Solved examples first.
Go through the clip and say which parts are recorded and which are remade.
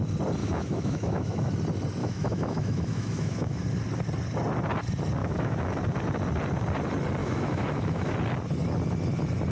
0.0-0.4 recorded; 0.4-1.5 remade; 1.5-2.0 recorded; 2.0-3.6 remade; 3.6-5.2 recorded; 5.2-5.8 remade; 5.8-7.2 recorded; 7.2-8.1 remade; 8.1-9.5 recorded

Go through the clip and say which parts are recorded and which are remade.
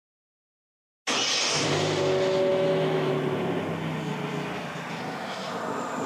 0.0-2.5 recorded; 2.5-3.1 remade; 3.1-6.1 recorded